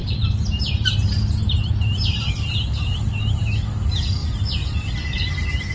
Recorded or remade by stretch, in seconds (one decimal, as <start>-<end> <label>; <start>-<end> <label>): 0.0-3.4 remade; 3.4-5.7 recorded